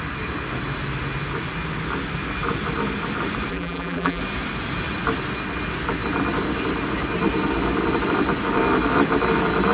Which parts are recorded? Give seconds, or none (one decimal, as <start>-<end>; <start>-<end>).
0.0-3.5; 4.2-9.7

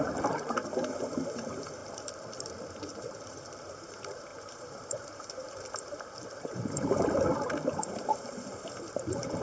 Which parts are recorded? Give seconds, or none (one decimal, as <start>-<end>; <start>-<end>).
1.8-2.6

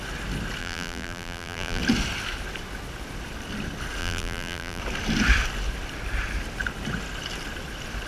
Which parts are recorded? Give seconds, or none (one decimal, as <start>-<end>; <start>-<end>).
0.0-0.6; 1.8-4.0; 4.8-8.1

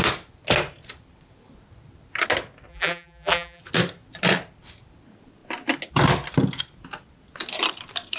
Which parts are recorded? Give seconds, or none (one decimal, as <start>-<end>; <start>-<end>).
0.0-2.7; 3.6-8.2

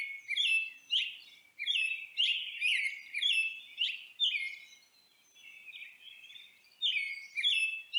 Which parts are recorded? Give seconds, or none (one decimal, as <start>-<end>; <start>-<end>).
0.0-8.0

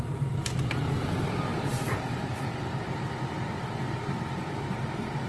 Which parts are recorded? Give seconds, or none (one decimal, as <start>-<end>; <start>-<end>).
none

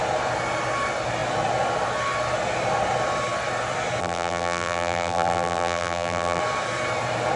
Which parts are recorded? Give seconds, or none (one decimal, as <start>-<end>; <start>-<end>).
0.0-4.0; 6.4-7.4